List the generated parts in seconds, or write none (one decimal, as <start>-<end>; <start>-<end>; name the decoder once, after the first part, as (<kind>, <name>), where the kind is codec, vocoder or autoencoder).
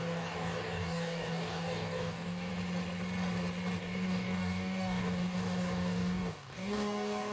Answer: 0.0-2.5 (codec, DAC); 3.8-7.3